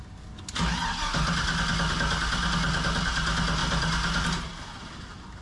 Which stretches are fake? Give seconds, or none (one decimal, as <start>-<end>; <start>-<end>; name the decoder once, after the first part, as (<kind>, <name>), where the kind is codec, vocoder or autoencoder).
none